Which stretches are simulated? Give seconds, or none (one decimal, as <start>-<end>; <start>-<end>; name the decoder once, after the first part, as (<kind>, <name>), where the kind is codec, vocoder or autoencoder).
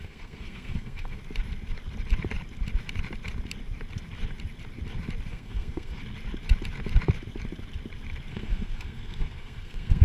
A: 0.0-1.2 (codec, SNAC); 5.3-6.0; 8.3-10.0